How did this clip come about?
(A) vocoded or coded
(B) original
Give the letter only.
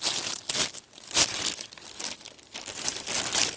B